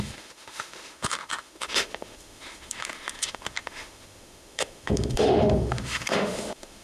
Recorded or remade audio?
remade